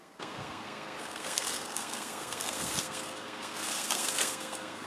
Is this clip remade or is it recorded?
remade